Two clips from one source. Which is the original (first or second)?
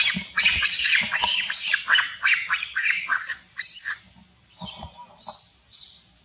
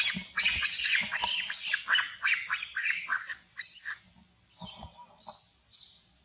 second